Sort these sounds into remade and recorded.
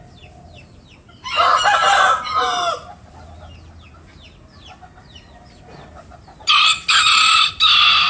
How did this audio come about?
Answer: recorded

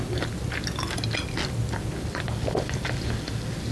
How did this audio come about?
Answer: recorded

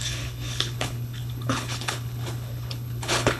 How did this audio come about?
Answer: remade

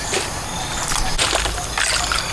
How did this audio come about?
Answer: recorded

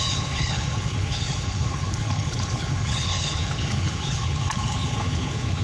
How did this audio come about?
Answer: remade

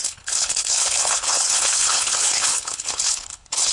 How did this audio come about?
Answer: remade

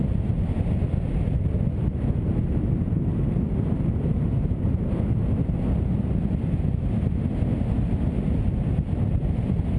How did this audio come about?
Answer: recorded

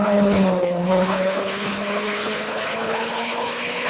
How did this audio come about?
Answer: remade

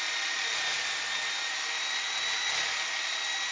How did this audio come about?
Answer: recorded